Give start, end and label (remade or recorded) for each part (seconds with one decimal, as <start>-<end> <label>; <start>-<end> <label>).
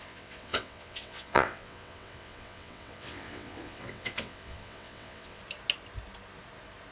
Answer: 0.0-5.4 remade; 5.4-6.9 recorded